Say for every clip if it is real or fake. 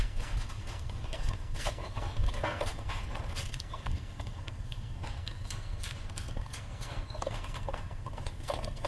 fake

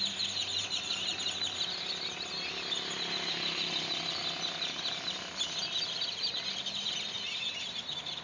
real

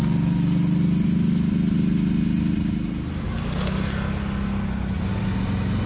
real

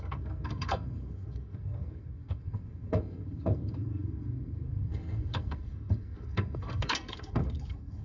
fake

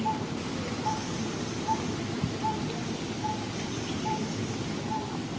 real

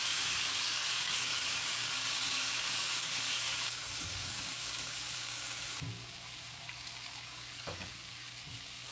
fake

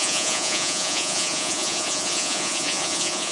fake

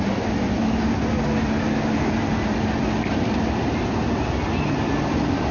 real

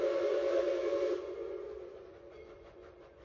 fake